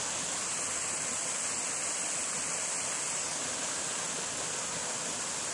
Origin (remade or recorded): recorded